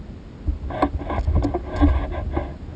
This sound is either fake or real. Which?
real